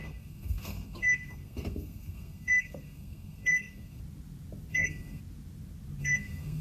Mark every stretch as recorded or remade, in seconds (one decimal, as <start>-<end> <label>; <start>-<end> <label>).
0.0-4.0 remade; 4.0-4.7 recorded; 4.7-5.2 remade; 5.2-6.0 recorded; 6.0-6.6 remade